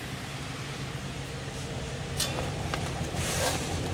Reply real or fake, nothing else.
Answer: fake